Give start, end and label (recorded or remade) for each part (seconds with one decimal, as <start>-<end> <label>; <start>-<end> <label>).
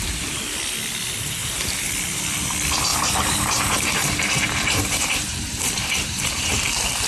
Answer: 0.0-1.4 recorded; 1.4-1.9 remade; 1.9-2.9 recorded; 2.9-6.5 remade; 6.5-7.1 recorded